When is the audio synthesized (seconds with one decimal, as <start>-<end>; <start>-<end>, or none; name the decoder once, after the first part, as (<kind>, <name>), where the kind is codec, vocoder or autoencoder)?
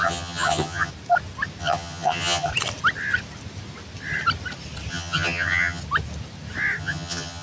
0.0-0.9 (vocoder, HiFi-GAN); 1.6-2.5; 4.9-5.8; 6.8-7.4